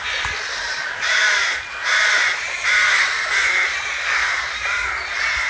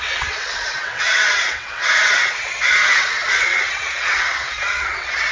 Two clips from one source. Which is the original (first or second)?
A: first